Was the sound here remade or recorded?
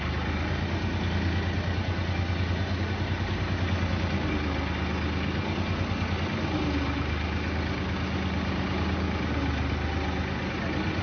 recorded